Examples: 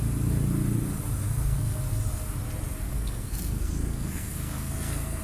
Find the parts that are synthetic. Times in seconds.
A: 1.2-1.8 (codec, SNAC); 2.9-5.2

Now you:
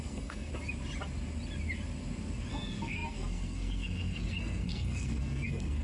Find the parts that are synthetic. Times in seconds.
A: 0.0-0.5 (codec, SNAC); 2.5-5.8

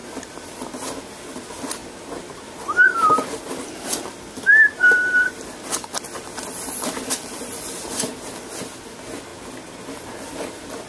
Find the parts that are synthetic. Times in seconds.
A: 0.0-1.0 (vocoder, BigVGAN v2); 4.5-8.0

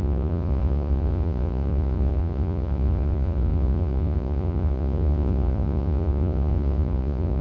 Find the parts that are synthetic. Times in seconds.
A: 0.0-7.4 (vocoder, Vocos)

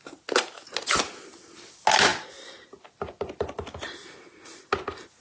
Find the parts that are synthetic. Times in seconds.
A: none